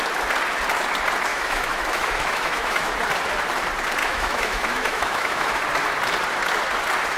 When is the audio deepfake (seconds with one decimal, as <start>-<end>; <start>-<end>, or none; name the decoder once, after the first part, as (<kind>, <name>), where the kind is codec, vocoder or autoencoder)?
1.3-2.9 (autoencoder, DAC-VAE); 4.0-5.6